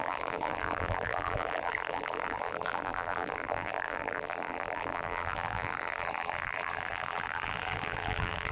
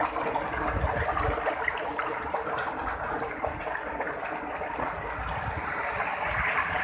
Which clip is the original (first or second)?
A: second